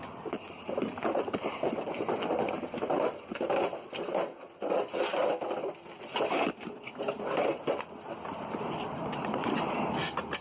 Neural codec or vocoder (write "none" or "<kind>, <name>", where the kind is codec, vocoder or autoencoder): none